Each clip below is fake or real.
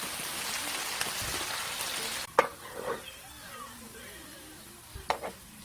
real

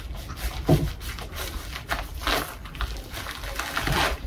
real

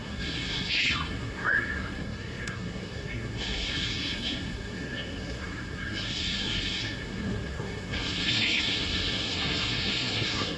fake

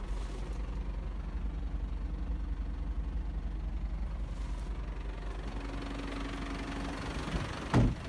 real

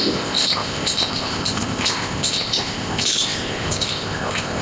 fake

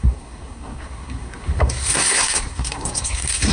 fake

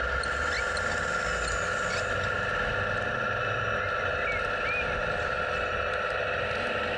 real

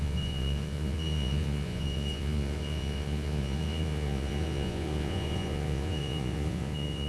fake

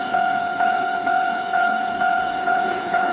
fake